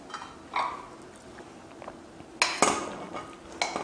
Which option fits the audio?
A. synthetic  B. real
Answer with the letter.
B